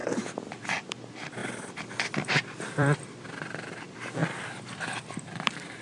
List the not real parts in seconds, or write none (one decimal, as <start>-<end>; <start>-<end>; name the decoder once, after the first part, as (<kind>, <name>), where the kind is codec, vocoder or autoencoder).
0.6-4.2 (vocoder, BigVGAN v2); 4.7-5.8